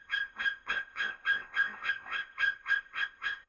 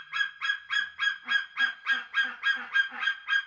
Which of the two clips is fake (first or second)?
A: first